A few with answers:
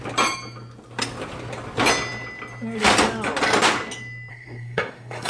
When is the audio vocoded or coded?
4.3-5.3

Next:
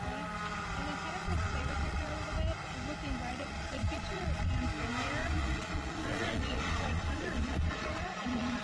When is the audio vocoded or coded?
1.2-2.1; 3.3-4.5; 5.2-8.6

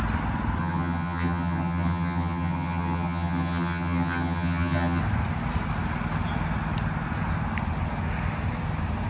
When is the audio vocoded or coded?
0.6-5.0